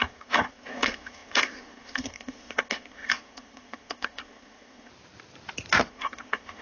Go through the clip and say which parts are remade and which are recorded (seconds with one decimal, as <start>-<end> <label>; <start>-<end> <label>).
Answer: 0.0-4.9 remade; 4.9-5.8 recorded; 5.8-6.6 remade

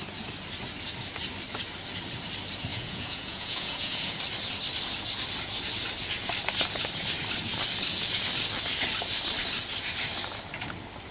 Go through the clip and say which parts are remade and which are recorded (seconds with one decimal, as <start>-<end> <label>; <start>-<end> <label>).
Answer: 0.0-2.7 recorded; 2.7-4.2 remade; 4.2-11.1 recorded